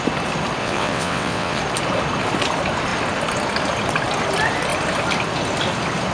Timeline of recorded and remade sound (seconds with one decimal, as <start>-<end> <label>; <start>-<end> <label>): 0.0-0.6 recorded; 0.6-1.6 remade; 1.6-6.1 recorded